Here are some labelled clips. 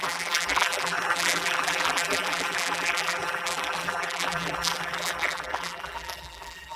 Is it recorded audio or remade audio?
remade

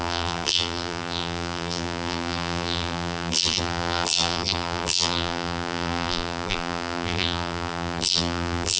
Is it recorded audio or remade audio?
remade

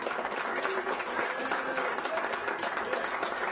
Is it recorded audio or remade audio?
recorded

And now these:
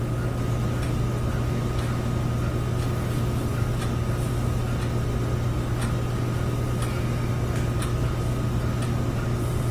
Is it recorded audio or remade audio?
recorded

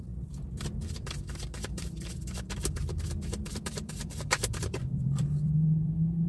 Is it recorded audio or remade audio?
remade